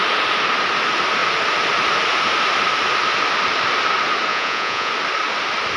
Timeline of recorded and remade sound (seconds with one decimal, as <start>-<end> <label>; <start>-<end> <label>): 0.0-4.3 recorded; 4.3-4.9 remade; 4.9-5.8 recorded